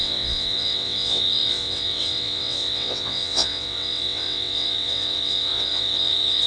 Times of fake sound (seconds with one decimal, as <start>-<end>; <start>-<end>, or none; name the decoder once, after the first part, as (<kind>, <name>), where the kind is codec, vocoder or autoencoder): 0.0-6.5 (vocoder, WaveNeXt)